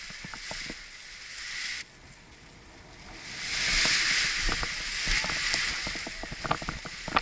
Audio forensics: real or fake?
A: real